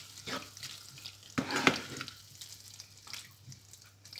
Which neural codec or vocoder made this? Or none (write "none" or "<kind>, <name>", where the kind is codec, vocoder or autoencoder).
none